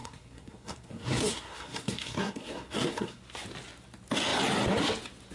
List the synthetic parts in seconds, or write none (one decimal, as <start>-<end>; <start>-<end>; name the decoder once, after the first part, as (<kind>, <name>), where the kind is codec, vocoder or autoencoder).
0.0-3.2 (codec, SNAC)